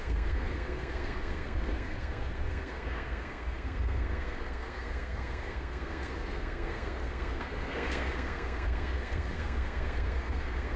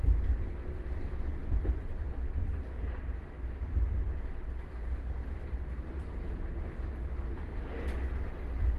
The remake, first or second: first